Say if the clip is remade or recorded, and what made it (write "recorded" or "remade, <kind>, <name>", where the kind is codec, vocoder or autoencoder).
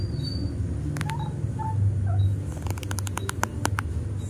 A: recorded